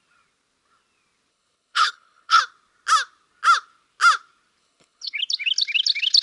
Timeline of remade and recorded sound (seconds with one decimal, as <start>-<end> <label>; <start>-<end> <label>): 0.0-1.3 recorded; 1.3-2.4 remade; 2.4-4.6 recorded; 4.6-5.2 remade; 5.2-6.2 recorded